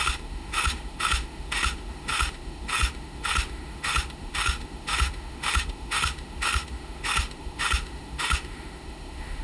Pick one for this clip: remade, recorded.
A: remade